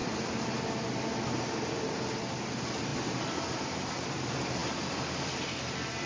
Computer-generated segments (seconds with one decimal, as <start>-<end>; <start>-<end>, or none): none